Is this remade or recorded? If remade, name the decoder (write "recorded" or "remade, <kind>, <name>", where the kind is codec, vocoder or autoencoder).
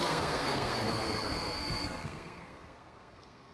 remade, codec, SNAC